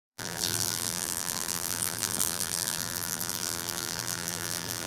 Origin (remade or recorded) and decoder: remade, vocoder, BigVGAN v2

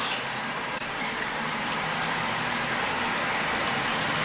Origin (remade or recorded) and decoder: remade, vocoder, BigVGAN v2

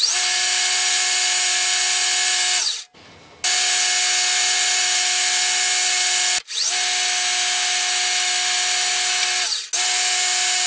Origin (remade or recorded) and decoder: recorded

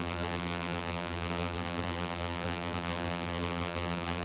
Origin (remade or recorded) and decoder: remade, vocoder, BigVGAN v2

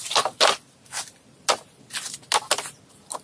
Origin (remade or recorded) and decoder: recorded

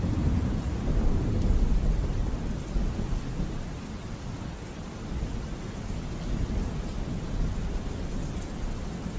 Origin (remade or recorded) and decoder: recorded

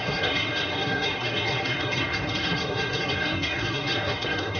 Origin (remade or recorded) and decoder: remade, codec, SNAC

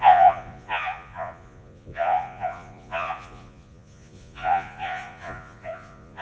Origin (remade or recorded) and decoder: remade, vocoder, Vocos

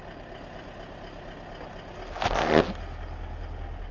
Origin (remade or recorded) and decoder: recorded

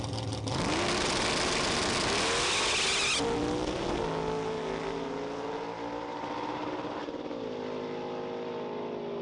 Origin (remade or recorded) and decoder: recorded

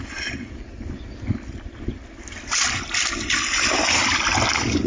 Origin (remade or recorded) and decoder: recorded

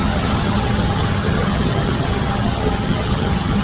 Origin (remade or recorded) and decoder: remade, vocoder, HiFi-GAN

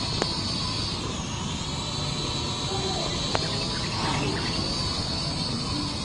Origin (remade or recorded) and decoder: recorded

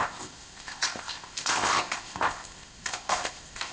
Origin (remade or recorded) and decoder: remade, codec, ZipCodec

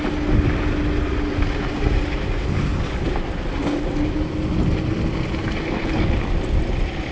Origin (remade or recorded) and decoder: recorded